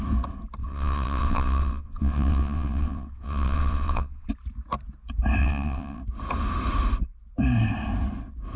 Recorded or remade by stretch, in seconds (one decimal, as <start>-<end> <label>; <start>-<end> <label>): 0.0-0.6 recorded; 0.6-4.3 remade; 4.3-5.4 recorded; 5.4-6.0 remade; 6.0-8.6 recorded